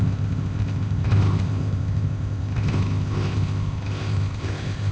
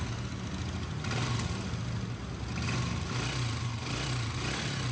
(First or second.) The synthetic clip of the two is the first